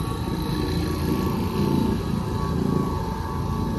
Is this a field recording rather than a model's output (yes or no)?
yes